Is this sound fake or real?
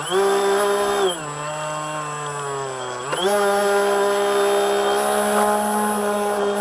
real